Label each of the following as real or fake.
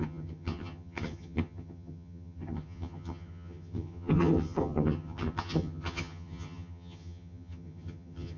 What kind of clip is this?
fake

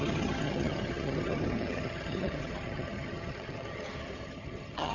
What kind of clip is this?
fake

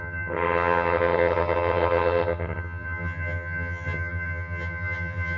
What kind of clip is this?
fake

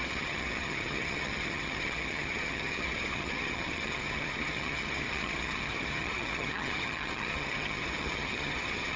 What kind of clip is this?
fake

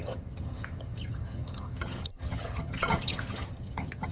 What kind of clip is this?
fake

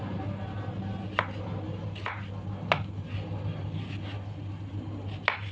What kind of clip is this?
real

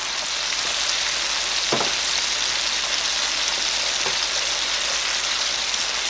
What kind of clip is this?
real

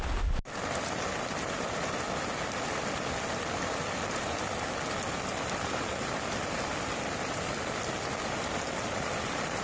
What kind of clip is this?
real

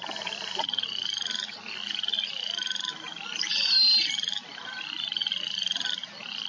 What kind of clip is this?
real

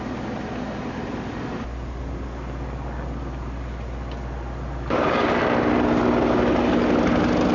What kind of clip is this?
real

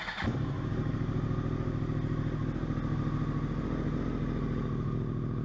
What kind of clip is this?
real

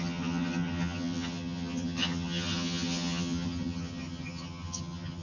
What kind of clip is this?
fake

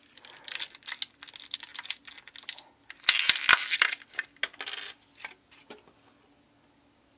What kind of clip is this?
real